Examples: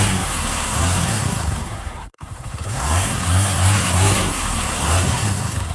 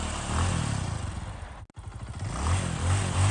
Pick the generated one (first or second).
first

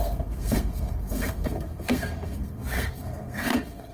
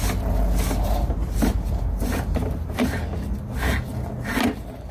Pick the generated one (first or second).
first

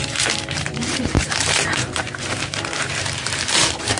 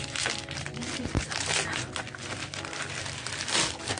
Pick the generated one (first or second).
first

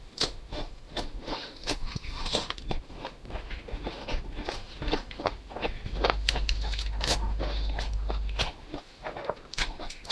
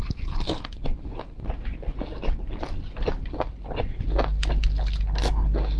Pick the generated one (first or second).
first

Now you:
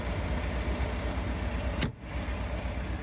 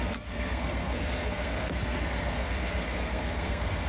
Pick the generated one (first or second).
second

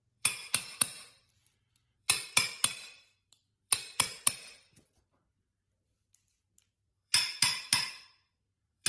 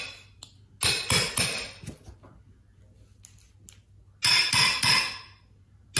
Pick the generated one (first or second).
first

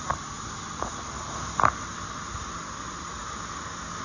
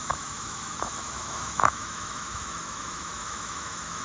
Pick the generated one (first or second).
second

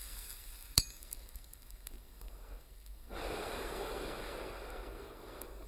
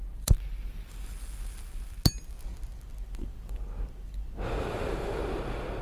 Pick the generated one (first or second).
first